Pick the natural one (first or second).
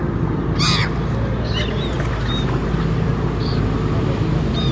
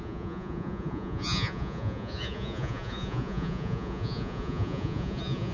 first